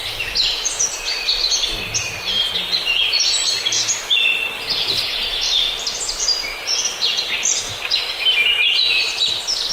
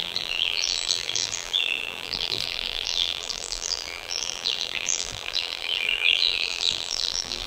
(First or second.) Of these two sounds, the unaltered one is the first